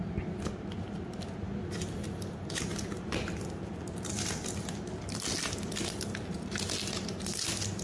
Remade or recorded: recorded